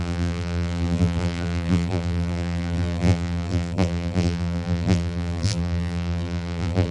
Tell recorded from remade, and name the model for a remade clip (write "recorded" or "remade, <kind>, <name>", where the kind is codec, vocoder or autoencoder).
remade, vocoder, BigVGAN v2